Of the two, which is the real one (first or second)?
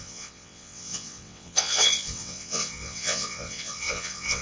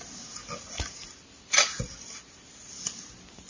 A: second